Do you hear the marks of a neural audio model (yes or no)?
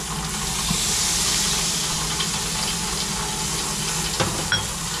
no